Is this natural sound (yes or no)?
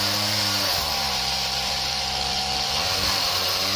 no